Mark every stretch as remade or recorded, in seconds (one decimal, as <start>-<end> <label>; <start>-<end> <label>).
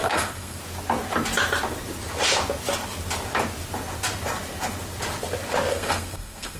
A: 0.0-0.6 remade; 0.6-5.7 recorded; 5.7-6.6 remade